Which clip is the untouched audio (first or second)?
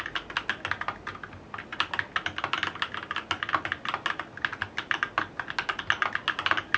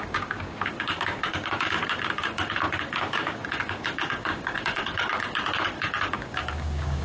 first